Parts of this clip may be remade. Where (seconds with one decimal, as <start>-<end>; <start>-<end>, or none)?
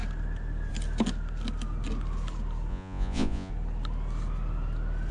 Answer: 2.7-3.5